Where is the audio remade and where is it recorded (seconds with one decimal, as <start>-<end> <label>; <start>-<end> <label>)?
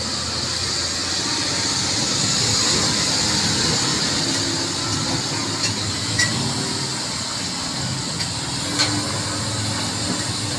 0.0-10.6 recorded